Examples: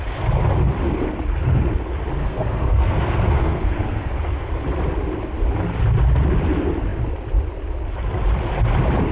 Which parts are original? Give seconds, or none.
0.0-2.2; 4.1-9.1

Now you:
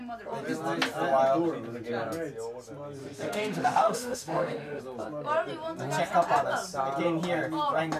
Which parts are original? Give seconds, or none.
0.0-3.0; 4.8-8.0

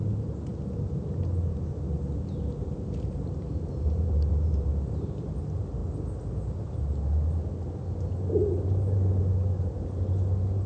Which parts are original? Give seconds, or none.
0.0-2.6; 5.3-10.7

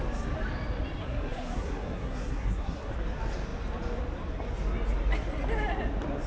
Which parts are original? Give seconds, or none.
0.0-1.0; 2.9-6.3

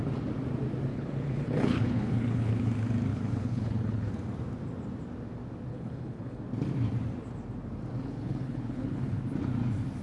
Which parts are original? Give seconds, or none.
0.0-0.9; 2.7-3.1; 4.1-5.7; 6.4-8.0; 9.2-10.0

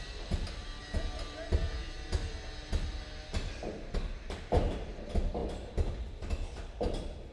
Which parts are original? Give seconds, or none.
0.0-7.3